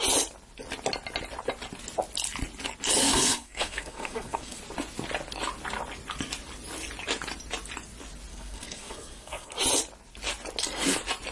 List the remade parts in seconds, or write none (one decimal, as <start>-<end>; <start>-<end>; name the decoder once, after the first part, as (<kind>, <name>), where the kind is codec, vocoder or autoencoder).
3.0-4.6 (codec, SNAC); 8.3-9.5